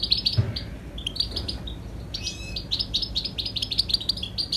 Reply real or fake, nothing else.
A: real